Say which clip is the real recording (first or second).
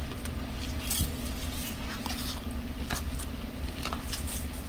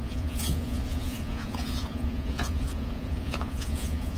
first